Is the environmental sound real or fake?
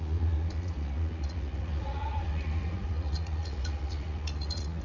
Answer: fake